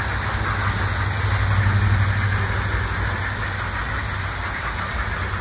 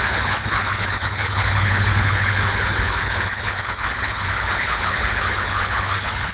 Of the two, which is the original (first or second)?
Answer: first